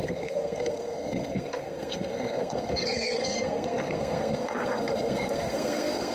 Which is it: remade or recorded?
remade